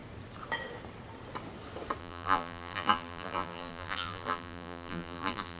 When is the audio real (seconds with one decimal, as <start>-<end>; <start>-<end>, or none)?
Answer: 0.0-2.0